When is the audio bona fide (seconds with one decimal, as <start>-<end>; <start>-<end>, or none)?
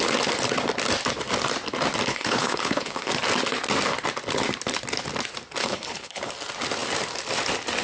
0.0-2.1; 3.1-5.6; 6.3-7.8